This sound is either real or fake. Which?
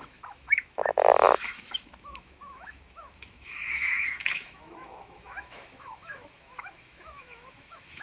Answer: fake